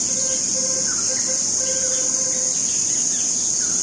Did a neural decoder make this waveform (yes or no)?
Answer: no